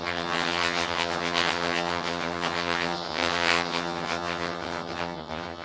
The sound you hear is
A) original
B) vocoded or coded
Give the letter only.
B